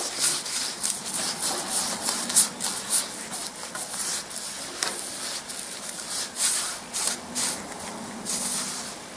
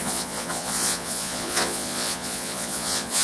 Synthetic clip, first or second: second